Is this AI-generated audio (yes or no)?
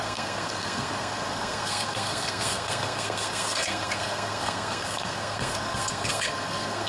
yes